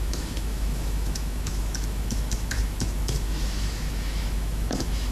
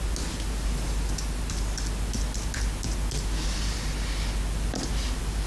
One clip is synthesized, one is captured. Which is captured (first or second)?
second